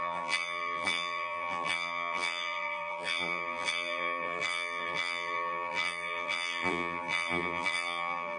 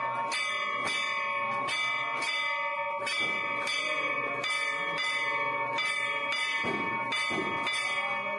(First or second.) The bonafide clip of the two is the second